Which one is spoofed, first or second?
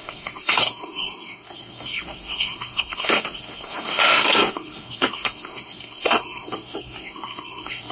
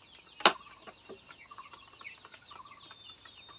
first